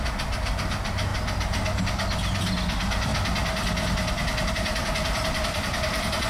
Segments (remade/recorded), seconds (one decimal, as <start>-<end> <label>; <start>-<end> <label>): 0.0-1.1 remade; 1.1-1.8 recorded; 1.8-3.1 remade; 3.1-4.5 recorded; 4.5-6.3 remade